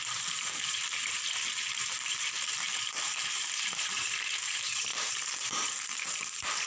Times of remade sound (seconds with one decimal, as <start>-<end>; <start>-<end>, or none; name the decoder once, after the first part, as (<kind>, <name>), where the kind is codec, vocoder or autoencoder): 0.0-6.7 (vocoder, BigVGAN v2)